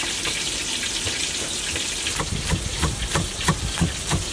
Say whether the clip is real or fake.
real